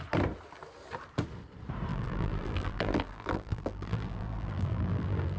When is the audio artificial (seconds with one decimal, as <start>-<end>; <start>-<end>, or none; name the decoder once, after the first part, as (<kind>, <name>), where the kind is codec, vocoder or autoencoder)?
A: 1.9-5.4 (vocoder, BigVGAN v2)